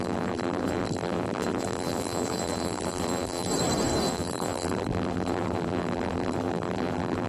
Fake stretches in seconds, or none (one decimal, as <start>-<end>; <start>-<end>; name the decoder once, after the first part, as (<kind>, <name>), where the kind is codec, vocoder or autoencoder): 0.0-3.5 (vocoder, BigVGAN v2); 4.1-7.3